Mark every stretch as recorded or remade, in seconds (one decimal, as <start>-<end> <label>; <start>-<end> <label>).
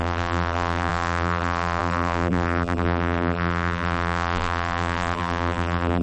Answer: 0.0-6.0 remade